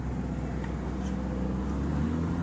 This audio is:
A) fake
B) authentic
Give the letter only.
B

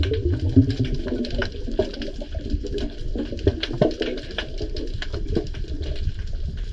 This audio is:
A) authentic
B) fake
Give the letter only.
A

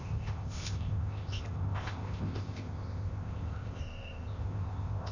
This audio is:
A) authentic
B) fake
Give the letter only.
B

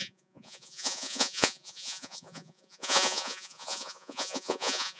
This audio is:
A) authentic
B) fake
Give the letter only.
B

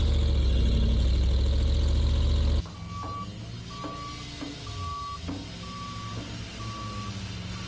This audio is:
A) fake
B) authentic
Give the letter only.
B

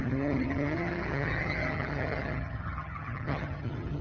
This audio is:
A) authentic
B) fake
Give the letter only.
B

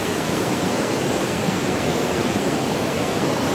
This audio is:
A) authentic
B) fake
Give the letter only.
B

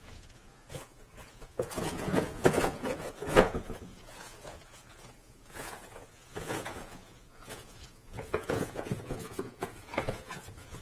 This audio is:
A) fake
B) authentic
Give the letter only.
A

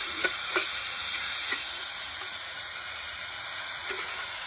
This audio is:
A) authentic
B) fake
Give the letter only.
B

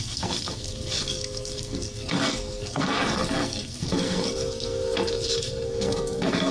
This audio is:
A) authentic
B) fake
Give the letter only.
B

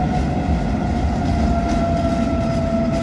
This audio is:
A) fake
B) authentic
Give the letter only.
B